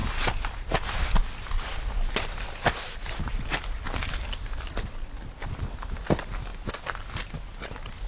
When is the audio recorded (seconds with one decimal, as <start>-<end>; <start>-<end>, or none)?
0.0-8.1